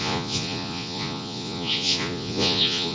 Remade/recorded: remade